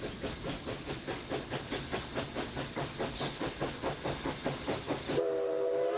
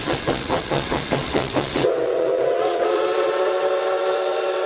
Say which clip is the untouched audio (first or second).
first